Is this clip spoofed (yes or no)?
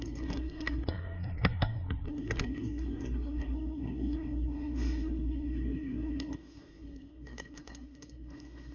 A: yes